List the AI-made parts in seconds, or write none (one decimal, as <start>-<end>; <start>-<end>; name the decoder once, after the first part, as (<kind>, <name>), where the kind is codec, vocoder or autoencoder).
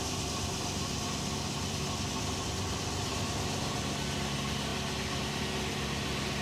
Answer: none